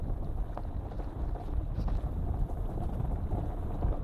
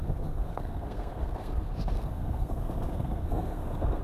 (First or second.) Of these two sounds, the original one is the first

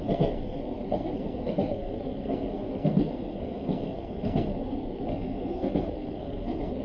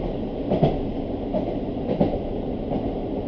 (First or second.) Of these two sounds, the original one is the second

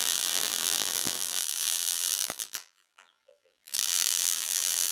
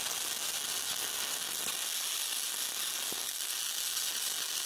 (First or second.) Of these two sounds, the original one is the second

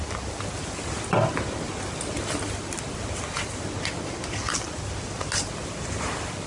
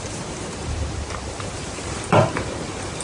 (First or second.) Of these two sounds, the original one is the first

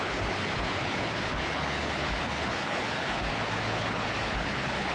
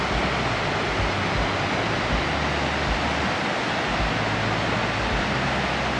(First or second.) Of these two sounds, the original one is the second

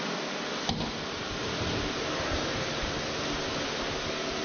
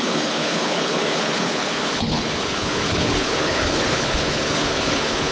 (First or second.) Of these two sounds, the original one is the first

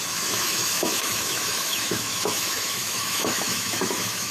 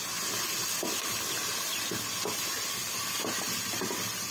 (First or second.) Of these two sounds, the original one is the second